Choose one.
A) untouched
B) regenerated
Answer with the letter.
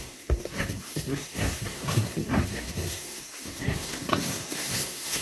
B